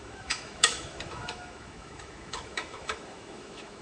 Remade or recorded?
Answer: remade